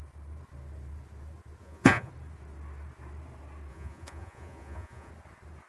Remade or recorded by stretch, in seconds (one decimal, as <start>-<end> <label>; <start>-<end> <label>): 0.0-1.6 recorded; 1.6-2.1 remade; 2.1-3.7 recorded; 3.7-5.1 remade; 5.1-5.7 recorded